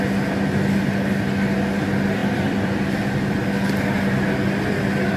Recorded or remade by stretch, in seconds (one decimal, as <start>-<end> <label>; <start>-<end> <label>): 0.0-2.2 recorded; 2.2-2.9 remade; 2.9-5.2 recorded